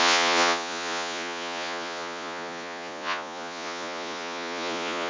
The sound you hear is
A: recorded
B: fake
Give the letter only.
B